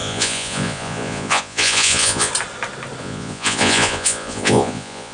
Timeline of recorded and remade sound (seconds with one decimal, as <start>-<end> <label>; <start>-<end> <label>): 0.0-2.3 remade; 2.3-3.0 recorded; 3.0-5.1 remade

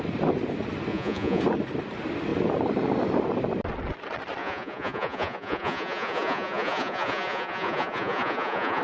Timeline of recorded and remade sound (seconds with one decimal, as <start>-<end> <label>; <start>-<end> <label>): 0.0-0.9 recorded; 0.9-1.4 remade; 1.4-4.4 recorded; 4.4-8.8 remade